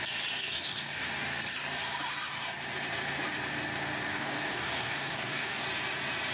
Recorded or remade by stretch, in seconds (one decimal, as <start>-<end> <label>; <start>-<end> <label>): 0.0-0.4 recorded; 0.4-1.1 remade; 1.1-4.1 recorded; 4.1-5.6 remade; 5.6-6.3 recorded